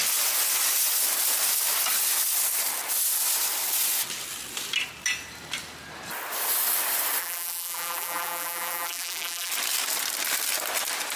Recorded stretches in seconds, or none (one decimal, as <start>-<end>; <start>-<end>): 0.0-7.2; 9.5-11.2